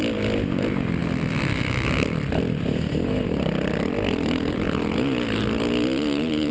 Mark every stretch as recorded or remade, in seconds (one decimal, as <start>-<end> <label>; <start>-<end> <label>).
0.0-6.5 recorded